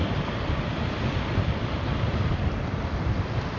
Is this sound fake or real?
fake